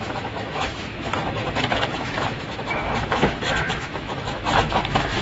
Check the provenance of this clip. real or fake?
fake